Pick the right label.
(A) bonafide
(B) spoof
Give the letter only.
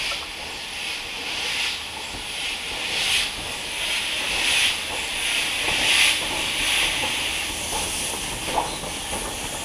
A